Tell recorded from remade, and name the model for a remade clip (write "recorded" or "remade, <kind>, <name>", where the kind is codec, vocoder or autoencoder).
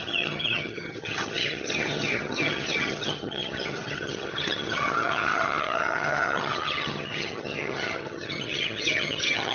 remade, vocoder, HiFi-GAN